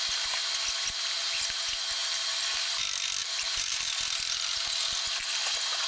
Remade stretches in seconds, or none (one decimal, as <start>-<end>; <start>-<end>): 2.0-2.8; 3.2-4.0

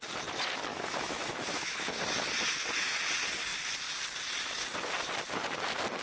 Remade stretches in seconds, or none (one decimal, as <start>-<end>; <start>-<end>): 0.7-2.0

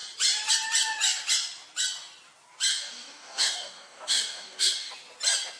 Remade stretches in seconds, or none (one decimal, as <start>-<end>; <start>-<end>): 2.7-4.9

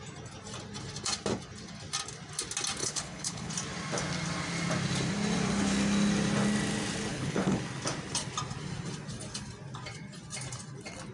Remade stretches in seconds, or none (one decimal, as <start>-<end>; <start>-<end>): 2.8-3.5; 7.1-7.6

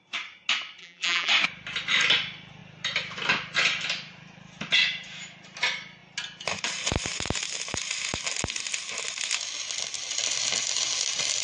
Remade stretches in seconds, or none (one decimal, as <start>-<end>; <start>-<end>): 0.8-1.3

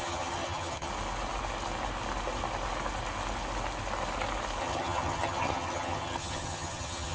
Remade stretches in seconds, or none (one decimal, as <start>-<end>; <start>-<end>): 0.0-0.9; 4.6-7.1

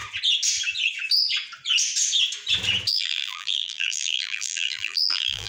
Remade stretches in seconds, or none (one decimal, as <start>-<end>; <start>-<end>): 2.9-5.5

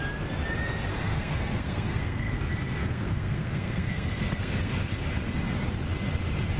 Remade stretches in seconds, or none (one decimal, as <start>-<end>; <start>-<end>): 0.9-2.4; 2.8-4.7